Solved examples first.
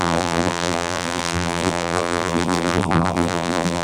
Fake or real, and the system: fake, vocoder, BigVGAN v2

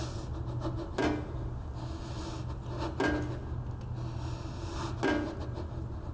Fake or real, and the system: real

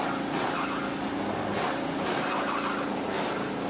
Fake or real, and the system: real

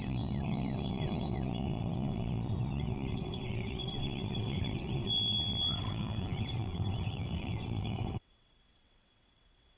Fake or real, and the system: fake, vocoder, WaveNeXt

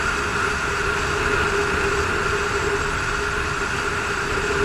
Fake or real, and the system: real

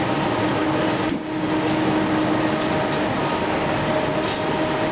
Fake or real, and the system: real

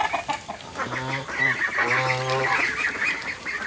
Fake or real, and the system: real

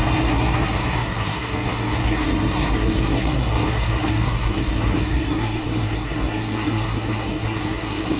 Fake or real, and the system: fake, codec, SNAC